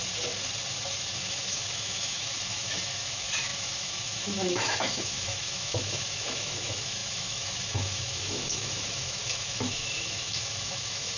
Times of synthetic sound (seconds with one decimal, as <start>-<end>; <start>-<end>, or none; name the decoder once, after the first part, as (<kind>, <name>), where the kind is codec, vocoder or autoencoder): 1.2-11.2 (autoencoder, DAC-VAE)